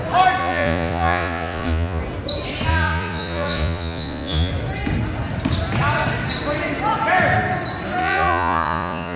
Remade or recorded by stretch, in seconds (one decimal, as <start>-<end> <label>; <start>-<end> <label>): 0.0-0.4 recorded; 0.4-2.0 remade; 2.0-2.7 recorded; 2.7-4.5 remade; 4.5-8.0 recorded; 8.0-9.2 remade